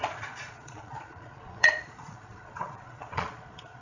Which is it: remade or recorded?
remade